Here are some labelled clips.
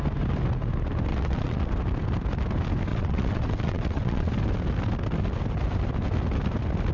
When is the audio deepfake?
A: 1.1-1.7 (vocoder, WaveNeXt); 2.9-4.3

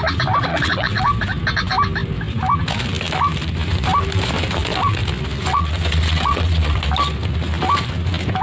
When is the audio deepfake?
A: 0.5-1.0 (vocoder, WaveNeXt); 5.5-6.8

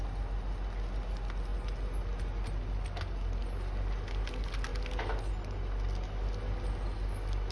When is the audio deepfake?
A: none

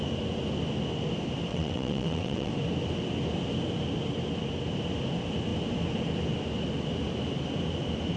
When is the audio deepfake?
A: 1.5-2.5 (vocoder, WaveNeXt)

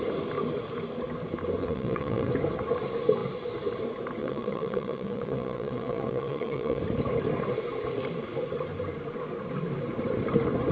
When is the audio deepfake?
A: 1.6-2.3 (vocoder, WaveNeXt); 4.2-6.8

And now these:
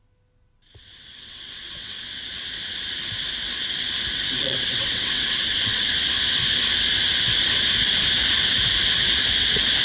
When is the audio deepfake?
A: 0.8-2.0 (vocoder, WaveNeXt); 4.4-5.8

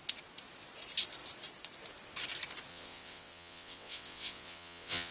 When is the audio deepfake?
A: 2.7-5.1 (vocoder, WaveNeXt)

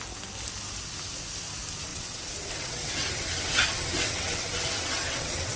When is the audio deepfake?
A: 1.9-5.6 (vocoder, WaveNeXt)